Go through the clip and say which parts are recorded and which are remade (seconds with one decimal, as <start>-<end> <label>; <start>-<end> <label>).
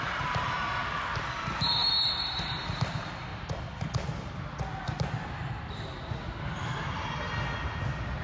0.0-8.2 recorded